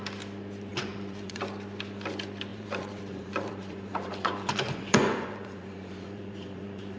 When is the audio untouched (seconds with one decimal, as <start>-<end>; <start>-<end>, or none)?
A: 0.0-0.7; 1.4-2.5